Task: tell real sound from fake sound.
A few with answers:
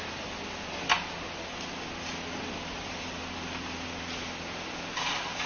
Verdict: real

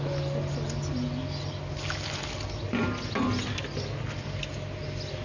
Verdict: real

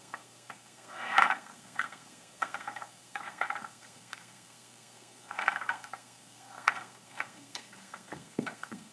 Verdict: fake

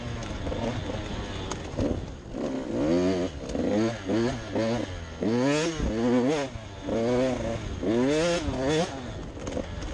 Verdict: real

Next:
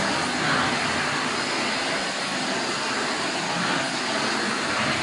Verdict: real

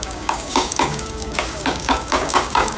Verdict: fake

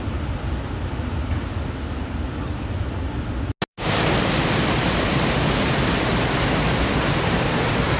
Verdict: real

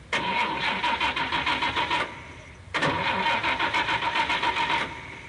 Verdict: real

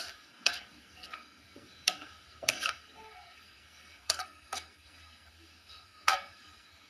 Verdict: fake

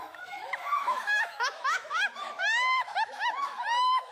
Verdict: fake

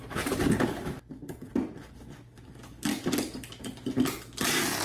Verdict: real